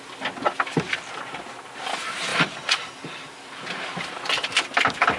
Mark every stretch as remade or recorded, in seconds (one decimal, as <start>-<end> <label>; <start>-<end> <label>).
0.0-2.3 recorded; 2.3-5.2 remade